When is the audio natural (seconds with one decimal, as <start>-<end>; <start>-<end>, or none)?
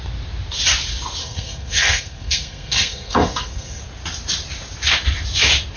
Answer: 0.0-1.2; 3.8-5.8